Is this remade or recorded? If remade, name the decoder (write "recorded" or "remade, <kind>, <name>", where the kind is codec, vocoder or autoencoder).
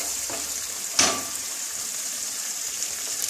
remade, vocoder, BigVGAN v2